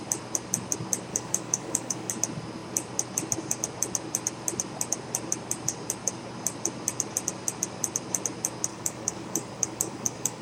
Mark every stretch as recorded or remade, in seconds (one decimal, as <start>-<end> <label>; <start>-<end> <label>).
0.0-1.1 recorded; 1.1-2.1 remade; 2.1-8.7 recorded; 8.7-10.4 remade